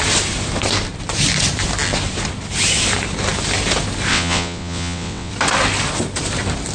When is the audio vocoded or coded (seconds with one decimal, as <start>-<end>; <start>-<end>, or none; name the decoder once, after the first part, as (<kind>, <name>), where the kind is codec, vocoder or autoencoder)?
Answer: 4.1-5.3 (vocoder, WaveNeXt)